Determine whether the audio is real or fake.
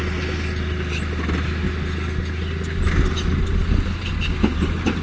real